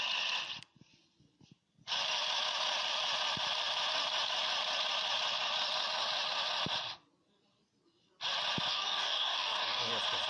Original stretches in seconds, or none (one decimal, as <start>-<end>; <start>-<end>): 0.0-8.7; 9.9-10.3